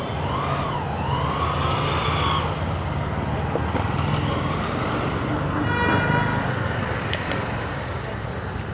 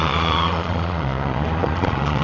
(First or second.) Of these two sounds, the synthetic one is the second